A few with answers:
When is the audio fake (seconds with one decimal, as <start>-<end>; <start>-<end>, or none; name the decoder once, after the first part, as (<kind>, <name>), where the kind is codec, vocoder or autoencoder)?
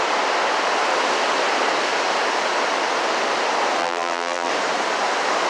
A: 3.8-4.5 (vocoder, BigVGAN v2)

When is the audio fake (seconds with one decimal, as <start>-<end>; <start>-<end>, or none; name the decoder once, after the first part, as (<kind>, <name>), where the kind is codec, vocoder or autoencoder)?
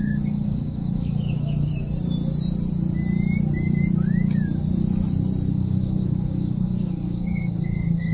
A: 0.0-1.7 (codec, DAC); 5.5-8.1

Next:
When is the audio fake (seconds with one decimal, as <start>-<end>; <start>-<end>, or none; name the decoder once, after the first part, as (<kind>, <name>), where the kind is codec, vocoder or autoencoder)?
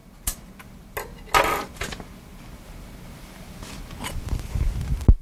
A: none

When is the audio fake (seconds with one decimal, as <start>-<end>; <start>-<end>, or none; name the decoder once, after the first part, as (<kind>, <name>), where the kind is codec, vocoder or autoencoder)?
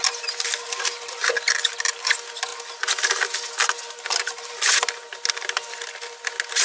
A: none